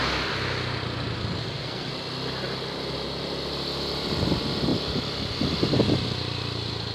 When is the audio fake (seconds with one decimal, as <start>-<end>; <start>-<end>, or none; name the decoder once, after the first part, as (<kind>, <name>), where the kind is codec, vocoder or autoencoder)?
1.4-1.9 (codec, SNAC)